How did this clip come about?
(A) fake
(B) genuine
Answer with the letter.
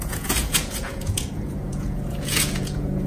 A